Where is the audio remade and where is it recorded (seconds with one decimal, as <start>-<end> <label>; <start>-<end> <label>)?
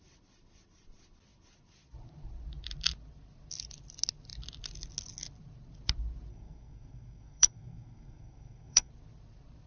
0.0-6.3 recorded; 6.3-8.9 remade; 8.9-9.7 recorded